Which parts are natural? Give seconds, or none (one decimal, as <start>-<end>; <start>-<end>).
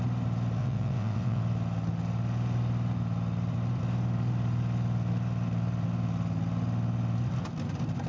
0.0-0.6; 1.4-8.1